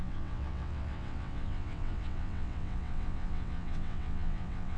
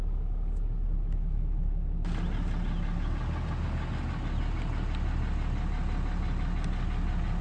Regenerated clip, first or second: first